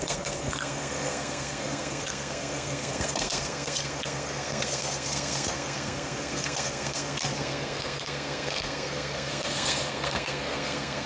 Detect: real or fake fake